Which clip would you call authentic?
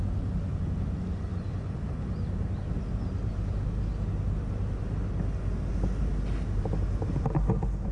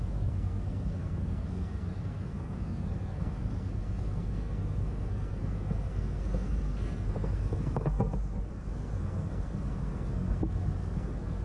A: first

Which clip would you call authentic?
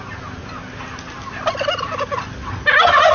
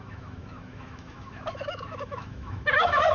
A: first